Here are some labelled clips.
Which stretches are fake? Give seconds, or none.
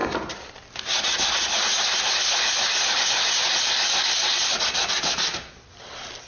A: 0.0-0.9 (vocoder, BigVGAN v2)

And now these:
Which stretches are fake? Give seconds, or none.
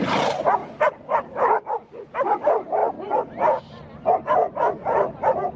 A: 0.0-0.6 (vocoder, BigVGAN v2); 1.3-2.8; 4.7-5.6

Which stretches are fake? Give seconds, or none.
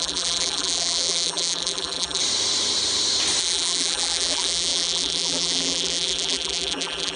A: 0.0-2.2 (vocoder, BigVGAN v2); 3.4-7.2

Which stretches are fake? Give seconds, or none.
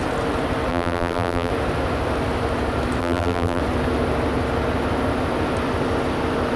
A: 0.7-1.5 (vocoder, BigVGAN v2); 3.0-3.6